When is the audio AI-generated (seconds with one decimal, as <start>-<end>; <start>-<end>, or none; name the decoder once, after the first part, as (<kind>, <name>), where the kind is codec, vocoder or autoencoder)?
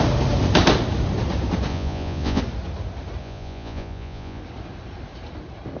1.7-2.4 (vocoder, Vocos); 3.2-4.4